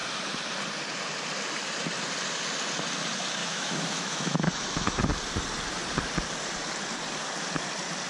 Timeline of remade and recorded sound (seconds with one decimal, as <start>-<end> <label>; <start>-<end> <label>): 0.0-3.4 recorded; 3.4-5.0 remade; 5.0-8.1 recorded